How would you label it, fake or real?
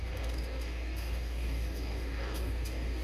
fake